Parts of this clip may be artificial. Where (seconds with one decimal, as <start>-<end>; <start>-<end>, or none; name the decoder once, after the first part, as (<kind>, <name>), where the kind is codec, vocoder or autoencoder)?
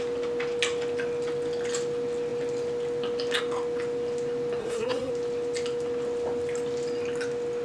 4.6-5.1 (codec, SNAC)